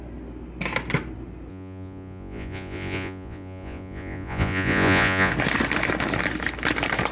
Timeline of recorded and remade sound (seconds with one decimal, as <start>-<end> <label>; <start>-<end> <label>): 0.0-1.5 recorded; 1.5-5.3 remade; 5.3-7.1 recorded